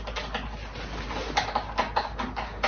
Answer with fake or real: real